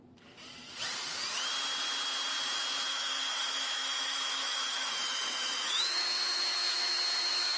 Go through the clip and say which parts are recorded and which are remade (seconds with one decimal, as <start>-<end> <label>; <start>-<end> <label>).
0.0-2.9 recorded; 2.9-7.6 remade